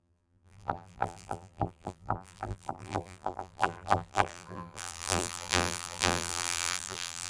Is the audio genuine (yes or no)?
no